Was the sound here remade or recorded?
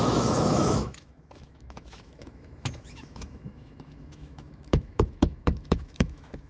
remade